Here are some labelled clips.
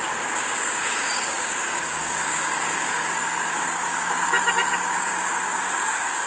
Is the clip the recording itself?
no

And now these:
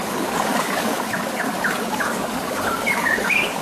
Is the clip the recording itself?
no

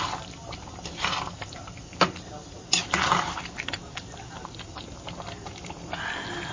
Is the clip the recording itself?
yes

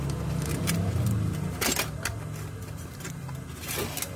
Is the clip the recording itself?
yes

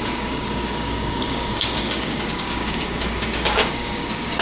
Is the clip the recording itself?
no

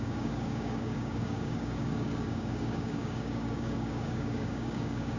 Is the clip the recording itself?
no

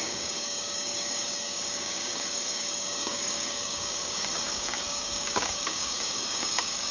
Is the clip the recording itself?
no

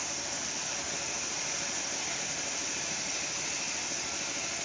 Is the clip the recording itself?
yes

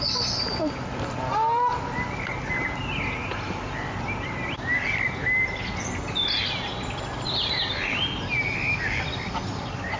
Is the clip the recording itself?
yes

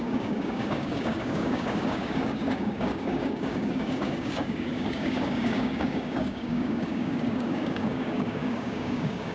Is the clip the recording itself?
no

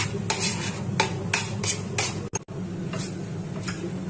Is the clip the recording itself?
yes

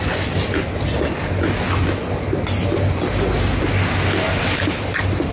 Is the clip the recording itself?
yes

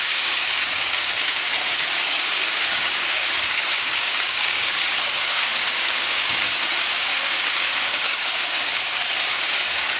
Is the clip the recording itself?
no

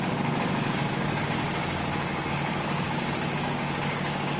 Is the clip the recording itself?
no